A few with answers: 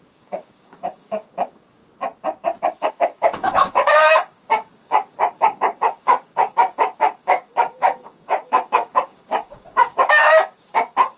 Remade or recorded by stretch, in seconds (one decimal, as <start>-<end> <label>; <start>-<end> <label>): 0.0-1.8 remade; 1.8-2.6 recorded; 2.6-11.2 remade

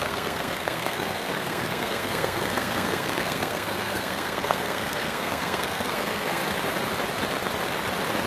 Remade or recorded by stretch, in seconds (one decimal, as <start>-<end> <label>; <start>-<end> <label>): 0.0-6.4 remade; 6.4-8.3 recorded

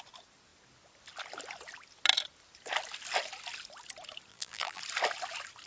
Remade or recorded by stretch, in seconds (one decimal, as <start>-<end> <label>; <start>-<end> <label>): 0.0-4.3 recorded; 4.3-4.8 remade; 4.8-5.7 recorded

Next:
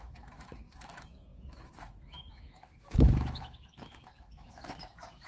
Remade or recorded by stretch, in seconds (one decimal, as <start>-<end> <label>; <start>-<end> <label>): 0.0-5.3 remade